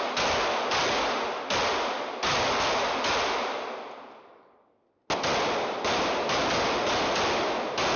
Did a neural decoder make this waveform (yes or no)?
no